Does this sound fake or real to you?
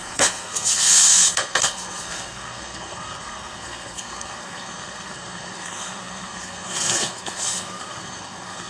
fake